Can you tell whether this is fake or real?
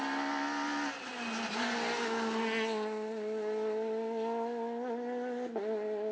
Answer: real